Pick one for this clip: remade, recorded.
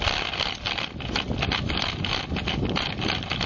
recorded